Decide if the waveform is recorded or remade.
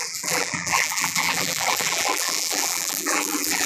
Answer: remade